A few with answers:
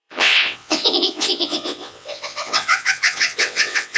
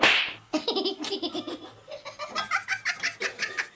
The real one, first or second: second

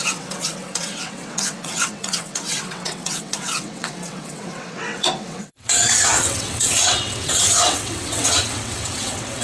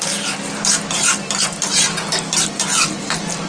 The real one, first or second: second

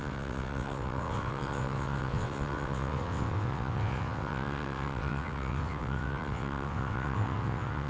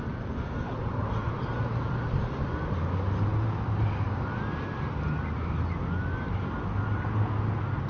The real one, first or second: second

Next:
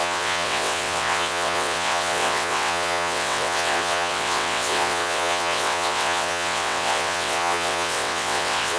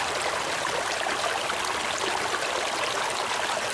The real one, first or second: second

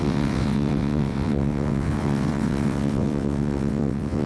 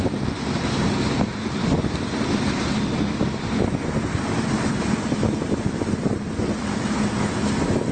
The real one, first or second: second